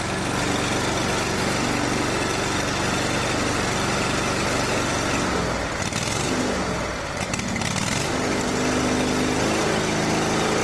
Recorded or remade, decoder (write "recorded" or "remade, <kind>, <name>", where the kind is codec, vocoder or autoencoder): recorded